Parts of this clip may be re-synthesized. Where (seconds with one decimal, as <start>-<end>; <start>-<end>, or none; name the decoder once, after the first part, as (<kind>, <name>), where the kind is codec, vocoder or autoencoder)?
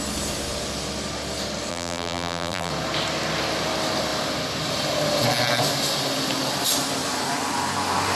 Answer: 1.7-2.7 (vocoder, BigVGAN v2)